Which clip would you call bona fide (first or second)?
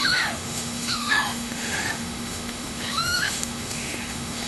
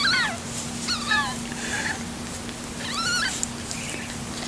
second